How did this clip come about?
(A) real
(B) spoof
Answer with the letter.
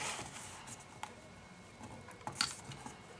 A